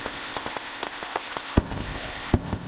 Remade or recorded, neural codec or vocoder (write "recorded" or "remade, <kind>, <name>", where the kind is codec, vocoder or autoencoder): remade, codec, ZipCodec